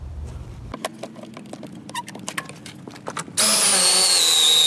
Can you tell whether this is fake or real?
real